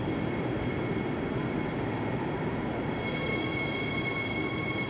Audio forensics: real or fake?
real